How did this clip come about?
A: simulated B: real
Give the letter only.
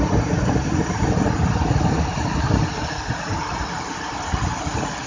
B